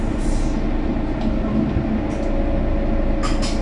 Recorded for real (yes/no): yes